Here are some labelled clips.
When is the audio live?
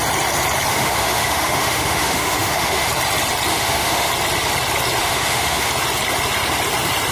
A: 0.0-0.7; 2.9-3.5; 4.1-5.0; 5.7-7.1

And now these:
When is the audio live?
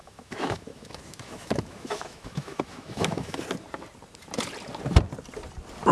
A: 3.4-5.9